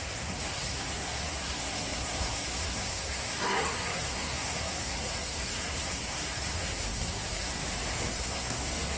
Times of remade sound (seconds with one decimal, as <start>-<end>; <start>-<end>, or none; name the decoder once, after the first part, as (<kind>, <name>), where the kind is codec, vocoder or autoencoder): 0.0-7.6 (codec, SNAC); 8.1-9.0